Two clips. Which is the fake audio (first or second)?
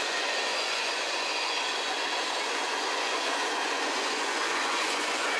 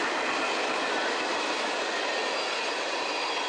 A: first